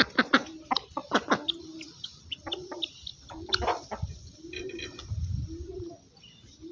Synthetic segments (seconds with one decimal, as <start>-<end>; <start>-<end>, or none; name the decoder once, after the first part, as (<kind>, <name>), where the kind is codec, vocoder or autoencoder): 1.0-1.6 (vocoder, BigVGAN v2); 2.1-5.1